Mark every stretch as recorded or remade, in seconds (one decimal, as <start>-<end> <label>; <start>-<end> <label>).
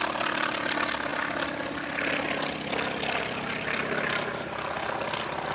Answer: 0.0-5.5 recorded